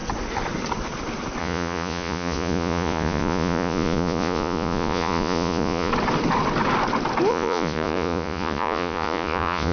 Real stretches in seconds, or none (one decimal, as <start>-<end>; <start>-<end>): 0.0-1.4; 5.9-7.3